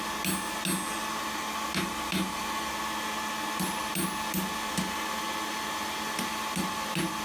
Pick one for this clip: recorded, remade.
recorded